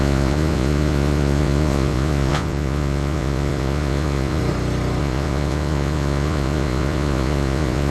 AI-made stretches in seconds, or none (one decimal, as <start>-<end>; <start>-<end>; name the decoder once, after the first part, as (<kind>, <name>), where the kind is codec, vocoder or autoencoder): 0.0-4.4 (vocoder, Vocos); 5.0-7.9